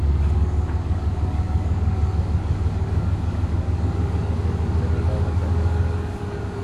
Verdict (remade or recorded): remade